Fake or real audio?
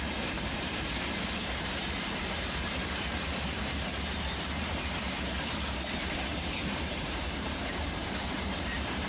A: fake